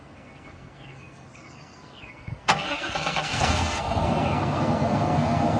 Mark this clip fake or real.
fake